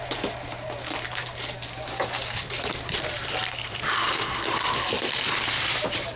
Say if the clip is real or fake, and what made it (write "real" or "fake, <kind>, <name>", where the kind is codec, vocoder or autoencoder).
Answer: fake, vocoder, BigVGAN v2